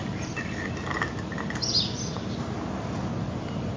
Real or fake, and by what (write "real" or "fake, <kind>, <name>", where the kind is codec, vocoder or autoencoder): real